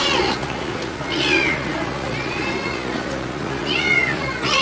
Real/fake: fake